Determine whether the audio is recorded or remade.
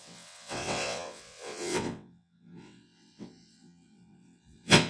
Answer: remade